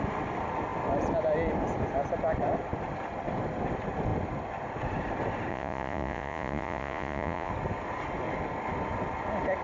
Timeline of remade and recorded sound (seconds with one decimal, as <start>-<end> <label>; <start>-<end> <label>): 0.0-5.5 recorded; 5.5-7.5 remade; 7.5-9.6 recorded